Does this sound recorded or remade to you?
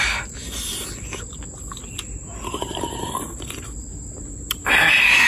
recorded